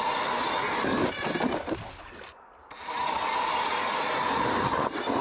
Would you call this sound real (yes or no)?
yes